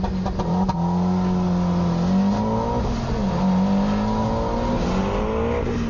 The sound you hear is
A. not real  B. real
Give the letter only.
B